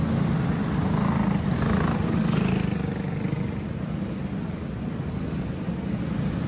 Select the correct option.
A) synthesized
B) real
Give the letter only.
B